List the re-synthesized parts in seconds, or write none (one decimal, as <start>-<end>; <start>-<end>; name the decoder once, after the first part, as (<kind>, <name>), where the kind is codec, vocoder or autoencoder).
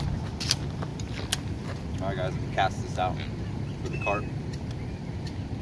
none